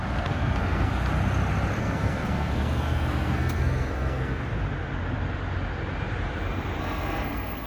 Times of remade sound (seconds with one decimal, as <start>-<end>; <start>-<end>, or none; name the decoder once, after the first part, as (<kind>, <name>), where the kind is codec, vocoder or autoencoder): 0.0-0.9 (codec, SNAC); 1.8-4.4; 6.8-7.7